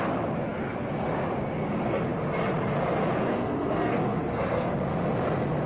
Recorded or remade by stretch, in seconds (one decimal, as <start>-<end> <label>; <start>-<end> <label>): 0.0-3.3 recorded; 3.3-4.7 remade; 4.7-5.7 recorded